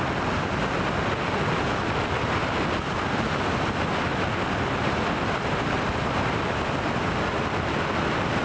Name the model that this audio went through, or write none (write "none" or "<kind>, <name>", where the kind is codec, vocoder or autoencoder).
none